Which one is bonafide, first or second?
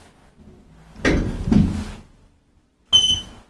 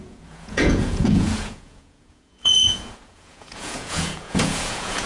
first